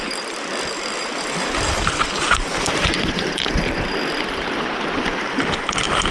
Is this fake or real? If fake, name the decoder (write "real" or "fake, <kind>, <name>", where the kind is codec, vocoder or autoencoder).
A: real